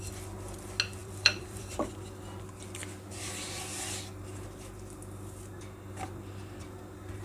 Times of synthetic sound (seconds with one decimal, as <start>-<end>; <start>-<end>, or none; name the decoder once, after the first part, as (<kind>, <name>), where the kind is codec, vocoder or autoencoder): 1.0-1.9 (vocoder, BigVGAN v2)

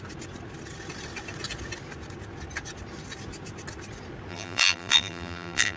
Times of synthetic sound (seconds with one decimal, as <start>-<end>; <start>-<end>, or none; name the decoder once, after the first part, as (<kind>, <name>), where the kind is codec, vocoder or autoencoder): 4.3-5.8 (vocoder, BigVGAN v2)

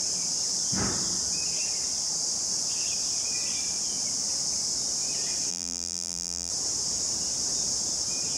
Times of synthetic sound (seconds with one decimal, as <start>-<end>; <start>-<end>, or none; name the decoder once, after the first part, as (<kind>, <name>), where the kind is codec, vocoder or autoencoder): 5.5-6.5 (vocoder, BigVGAN v2)

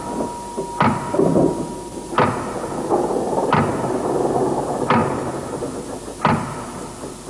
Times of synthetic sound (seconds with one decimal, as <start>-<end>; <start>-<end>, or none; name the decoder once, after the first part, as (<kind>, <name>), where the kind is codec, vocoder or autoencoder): 5.0-5.6 (vocoder, BigVGAN v2)

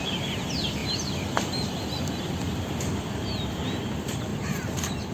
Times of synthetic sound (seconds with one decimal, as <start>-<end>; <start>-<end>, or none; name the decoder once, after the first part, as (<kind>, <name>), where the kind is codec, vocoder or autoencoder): 0.8-2.0 (vocoder, BigVGAN v2); 4.3-5.1

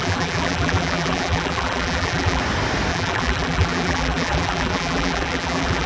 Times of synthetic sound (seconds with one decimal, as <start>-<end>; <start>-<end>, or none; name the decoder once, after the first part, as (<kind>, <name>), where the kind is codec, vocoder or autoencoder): 0.0-2.4 (vocoder, BigVGAN v2); 2.9-5.9